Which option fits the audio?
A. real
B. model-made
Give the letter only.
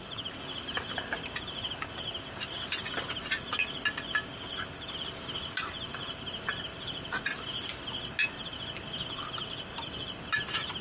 A